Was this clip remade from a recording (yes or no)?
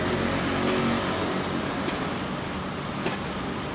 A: no